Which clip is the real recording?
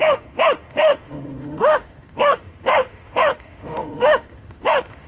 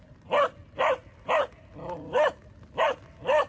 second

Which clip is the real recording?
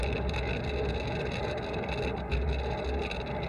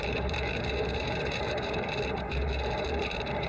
first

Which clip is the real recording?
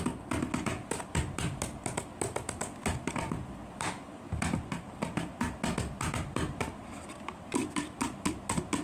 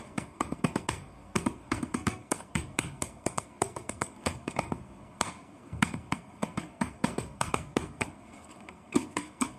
first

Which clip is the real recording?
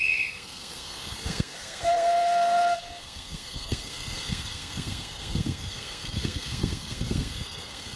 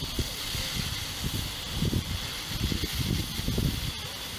second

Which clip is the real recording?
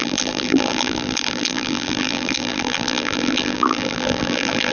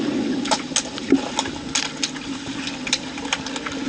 second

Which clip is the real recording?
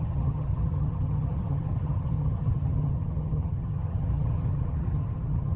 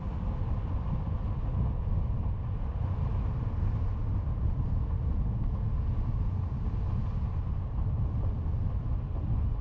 second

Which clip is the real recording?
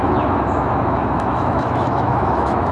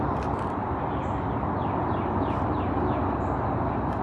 second